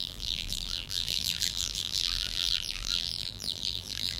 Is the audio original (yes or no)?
no